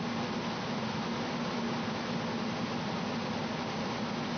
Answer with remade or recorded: recorded